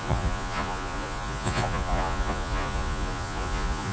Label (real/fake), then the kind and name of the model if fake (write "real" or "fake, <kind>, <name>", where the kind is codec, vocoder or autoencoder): fake, vocoder, Vocos